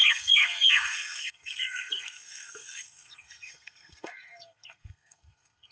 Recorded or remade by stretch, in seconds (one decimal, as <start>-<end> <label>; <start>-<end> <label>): 0.0-5.7 remade